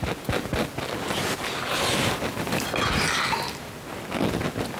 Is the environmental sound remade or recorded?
recorded